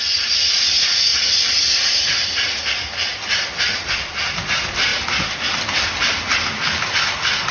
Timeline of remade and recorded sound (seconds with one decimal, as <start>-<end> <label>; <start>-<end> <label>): 0.0-7.5 remade